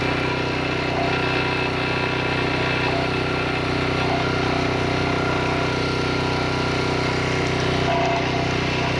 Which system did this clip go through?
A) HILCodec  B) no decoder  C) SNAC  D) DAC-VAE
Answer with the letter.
B